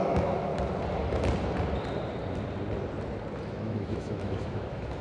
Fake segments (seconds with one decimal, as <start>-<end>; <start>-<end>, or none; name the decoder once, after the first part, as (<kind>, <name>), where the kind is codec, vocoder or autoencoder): 0.0-0.5 (autoencoder, DAC-VAE); 3.5-5.0